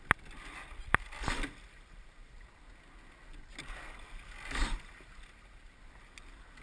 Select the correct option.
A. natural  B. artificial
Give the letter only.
A